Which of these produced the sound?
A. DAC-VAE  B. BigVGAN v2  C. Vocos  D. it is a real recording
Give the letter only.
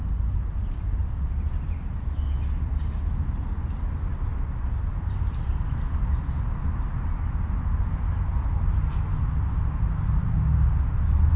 D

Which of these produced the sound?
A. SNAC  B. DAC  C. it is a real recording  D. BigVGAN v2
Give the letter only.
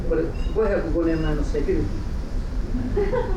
C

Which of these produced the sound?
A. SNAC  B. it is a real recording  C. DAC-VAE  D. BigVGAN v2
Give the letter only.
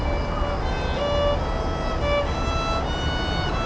B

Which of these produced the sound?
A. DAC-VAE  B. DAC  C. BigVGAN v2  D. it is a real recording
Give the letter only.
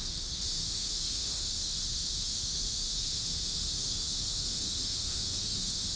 A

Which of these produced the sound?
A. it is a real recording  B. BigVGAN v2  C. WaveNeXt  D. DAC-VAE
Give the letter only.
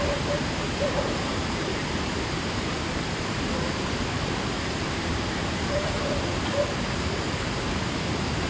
B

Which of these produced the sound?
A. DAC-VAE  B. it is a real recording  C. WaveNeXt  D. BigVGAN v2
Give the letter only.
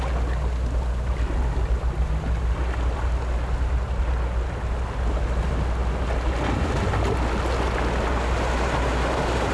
B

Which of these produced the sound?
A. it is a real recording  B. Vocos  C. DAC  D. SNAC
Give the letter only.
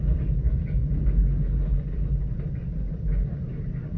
A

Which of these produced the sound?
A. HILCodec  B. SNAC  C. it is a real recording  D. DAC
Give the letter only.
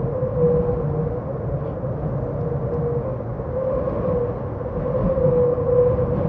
C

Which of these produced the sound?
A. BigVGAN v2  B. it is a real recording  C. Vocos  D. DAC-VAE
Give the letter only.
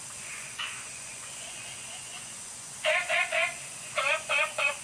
C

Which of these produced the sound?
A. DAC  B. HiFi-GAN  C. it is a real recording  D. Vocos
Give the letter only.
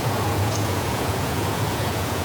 D